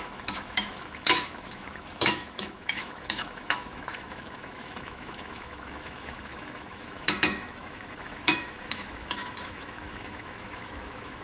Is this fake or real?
fake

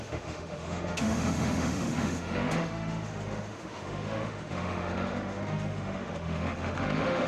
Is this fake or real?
fake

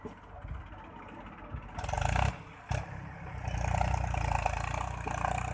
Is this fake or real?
real